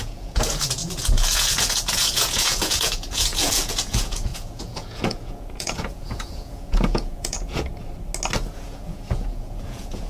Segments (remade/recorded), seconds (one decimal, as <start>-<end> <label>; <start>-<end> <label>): 0.0-7.7 remade; 7.7-8.6 recorded; 8.6-10.1 remade